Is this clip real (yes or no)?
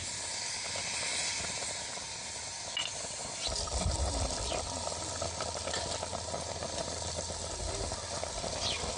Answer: yes